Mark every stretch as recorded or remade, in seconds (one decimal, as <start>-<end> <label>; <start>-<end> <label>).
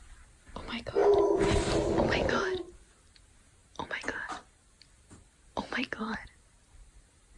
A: 0.0-3.6 recorded; 3.6-7.0 remade; 7.0-7.4 recorded